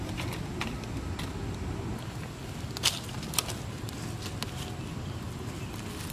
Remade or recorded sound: recorded